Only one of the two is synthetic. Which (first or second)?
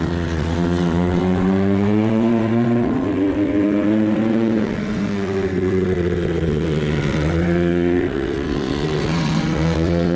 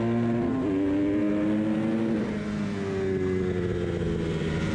first